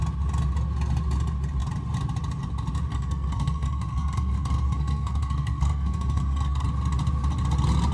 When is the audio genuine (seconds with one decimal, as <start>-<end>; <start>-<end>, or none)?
0.0-2.9; 6.7-7.9

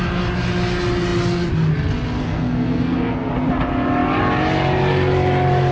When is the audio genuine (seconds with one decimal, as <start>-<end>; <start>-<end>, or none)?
0.0-2.2; 3.3-5.7

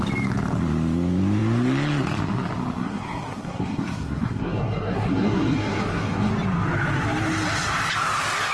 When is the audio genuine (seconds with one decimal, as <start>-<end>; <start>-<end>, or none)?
0.0-2.8; 6.3-8.5

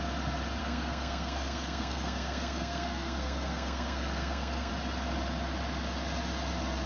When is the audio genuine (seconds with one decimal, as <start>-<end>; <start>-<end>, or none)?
0.0-0.6; 4.7-6.9

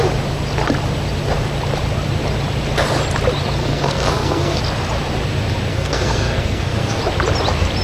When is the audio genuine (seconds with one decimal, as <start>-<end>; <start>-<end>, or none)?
0.0-3.6; 4.6-5.7; 7.0-7.8

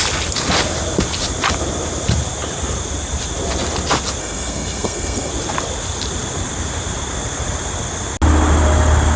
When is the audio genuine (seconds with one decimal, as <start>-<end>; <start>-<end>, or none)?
0.0-4.2; 5.3-9.2

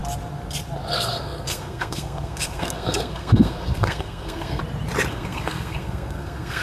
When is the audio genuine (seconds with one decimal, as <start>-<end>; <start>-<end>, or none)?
0.0-0.9; 4.6-5.1

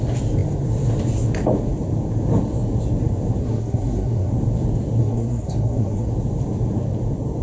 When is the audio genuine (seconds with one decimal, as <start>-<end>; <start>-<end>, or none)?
0.0-3.4; 4.3-5.0; 6.1-7.4